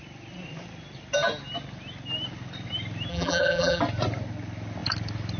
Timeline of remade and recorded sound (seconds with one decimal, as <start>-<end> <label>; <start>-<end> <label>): 0.0-3.1 recorded; 3.1-3.8 remade; 3.8-5.4 recorded